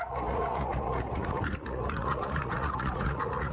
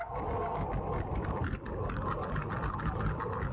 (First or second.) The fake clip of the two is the first